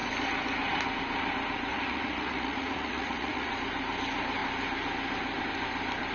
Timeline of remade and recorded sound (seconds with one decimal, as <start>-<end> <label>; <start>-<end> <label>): 0.0-1.7 recorded; 1.7-3.5 remade; 3.5-6.1 recorded